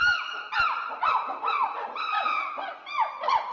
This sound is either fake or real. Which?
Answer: real